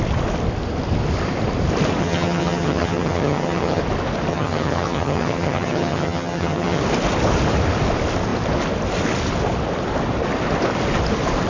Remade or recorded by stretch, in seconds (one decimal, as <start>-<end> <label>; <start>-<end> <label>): 0.0-2.0 recorded; 2.0-3.8 remade; 3.8-4.3 recorded; 4.3-6.8 remade; 6.8-11.5 recorded